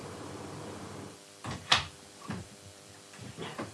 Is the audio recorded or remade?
remade